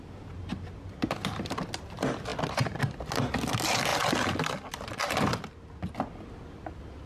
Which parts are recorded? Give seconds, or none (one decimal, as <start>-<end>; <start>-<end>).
0.0-2.3; 3.1-7.1